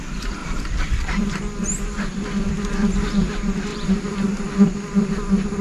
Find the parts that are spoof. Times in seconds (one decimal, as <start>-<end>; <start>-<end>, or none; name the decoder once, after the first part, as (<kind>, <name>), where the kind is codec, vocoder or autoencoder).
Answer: 2.8-3.3 (vocoder, BigVGAN v2); 3.7-4.7